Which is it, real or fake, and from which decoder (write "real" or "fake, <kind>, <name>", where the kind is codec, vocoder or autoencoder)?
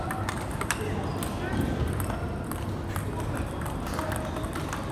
real